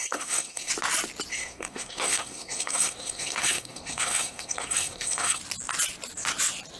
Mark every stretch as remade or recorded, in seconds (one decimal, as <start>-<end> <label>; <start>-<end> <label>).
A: 0.0-0.7 remade; 0.7-1.3 recorded; 1.3-5.4 remade; 5.4-6.8 recorded